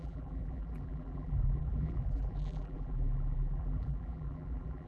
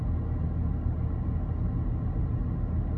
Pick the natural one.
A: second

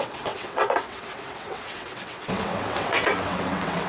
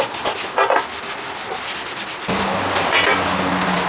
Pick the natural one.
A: second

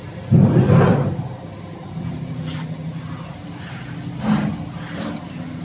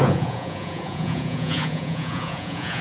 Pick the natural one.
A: first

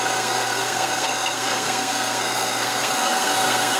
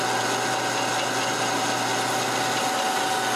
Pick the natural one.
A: second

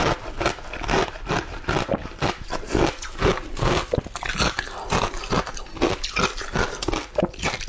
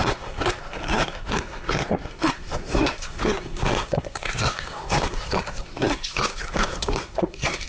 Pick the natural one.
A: first